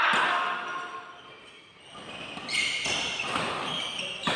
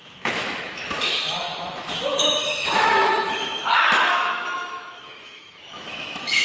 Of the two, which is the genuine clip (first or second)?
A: first